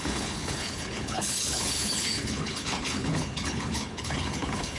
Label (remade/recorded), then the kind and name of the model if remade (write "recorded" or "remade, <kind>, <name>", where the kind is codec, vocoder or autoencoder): remade, codec, HILCodec